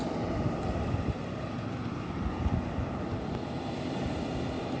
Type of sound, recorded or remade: remade